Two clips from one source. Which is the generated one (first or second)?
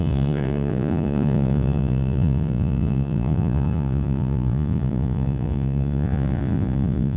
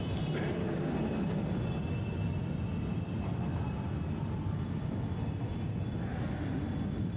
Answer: first